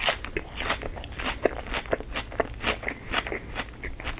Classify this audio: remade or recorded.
recorded